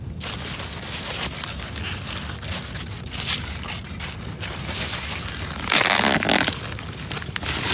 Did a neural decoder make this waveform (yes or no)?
no